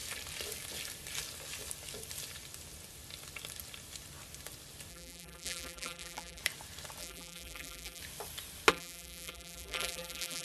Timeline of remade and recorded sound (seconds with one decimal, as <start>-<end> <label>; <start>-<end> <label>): 0.0-4.9 recorded; 4.9-6.4 remade; 6.4-7.0 recorded; 7.0-8.0 remade; 8.0-8.7 recorded; 8.7-10.4 remade

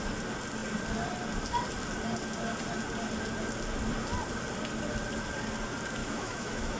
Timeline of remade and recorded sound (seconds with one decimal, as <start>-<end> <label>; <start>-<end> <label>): 0.0-6.0 recorded; 6.0-6.8 remade

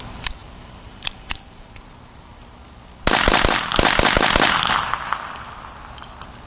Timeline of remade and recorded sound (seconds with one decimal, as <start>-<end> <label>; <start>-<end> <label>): 0.0-2.3 remade; 2.3-6.5 recorded

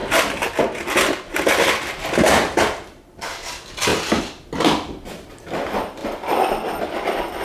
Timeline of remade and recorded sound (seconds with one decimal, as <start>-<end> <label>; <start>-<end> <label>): 0.0-7.4 recorded